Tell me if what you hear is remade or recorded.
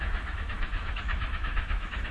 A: remade